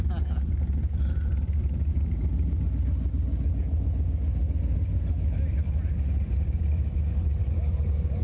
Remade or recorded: recorded